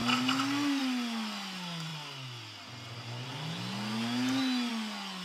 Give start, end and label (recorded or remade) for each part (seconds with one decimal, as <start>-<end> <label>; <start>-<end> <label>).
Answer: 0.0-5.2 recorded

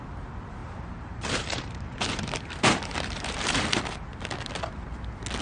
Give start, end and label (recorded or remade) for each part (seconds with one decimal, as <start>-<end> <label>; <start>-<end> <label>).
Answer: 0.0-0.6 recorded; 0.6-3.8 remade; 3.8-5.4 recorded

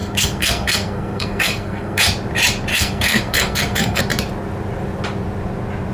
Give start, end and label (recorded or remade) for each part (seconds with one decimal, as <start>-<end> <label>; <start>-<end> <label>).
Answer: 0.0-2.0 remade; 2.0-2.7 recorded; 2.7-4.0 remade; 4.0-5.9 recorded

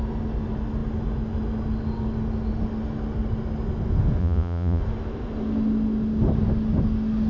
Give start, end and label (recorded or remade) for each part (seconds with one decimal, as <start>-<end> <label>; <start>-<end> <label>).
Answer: 0.0-4.2 recorded; 4.2-4.8 remade; 4.8-7.3 recorded

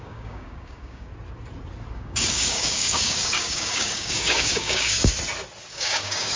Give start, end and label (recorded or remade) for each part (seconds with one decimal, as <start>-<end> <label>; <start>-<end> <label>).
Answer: 0.0-1.1 remade; 1.1-1.9 recorded; 1.9-5.1 remade; 5.1-5.7 recorded; 5.7-6.4 remade

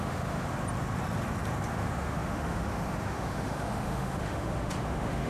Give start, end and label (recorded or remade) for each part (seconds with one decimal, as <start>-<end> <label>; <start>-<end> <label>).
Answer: 0.0-0.5 remade; 0.5-1.7 recorded; 1.7-5.3 remade

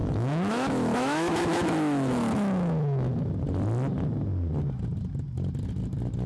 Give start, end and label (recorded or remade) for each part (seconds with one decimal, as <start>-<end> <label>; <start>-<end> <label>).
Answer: 0.0-3.3 remade; 3.3-6.3 recorded